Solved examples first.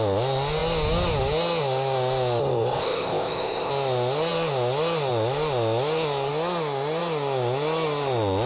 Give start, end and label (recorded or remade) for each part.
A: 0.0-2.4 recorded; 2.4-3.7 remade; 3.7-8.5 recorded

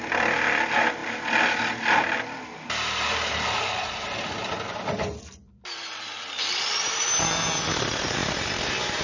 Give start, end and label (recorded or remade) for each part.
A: 0.0-9.0 remade

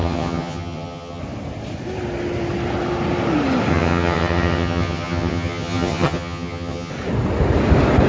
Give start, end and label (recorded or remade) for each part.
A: 0.0-1.2 remade; 1.2-3.7 recorded; 3.7-6.9 remade; 6.9-8.1 recorded

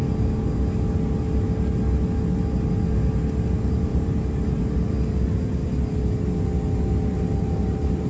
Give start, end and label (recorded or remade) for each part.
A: 0.0-3.9 recorded; 3.9-4.6 remade; 4.6-7.1 recorded; 7.1-8.1 remade

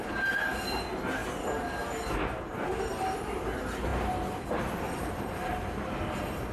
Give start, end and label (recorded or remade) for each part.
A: 0.0-1.2 remade; 1.2-2.1 recorded; 2.1-3.9 remade; 3.9-4.6 recorded; 4.6-6.5 remade

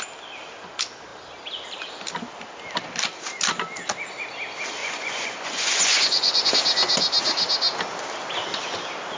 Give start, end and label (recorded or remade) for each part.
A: 0.0-4.8 recorded; 4.8-6.5 remade; 6.5-9.2 recorded